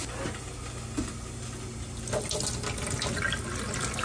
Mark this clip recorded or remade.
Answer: recorded